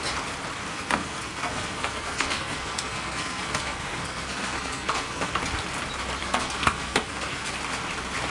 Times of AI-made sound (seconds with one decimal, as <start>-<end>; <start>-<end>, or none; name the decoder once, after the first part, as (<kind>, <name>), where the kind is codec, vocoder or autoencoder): 0.7-5.4 (codec, SNAC); 6.2-7.5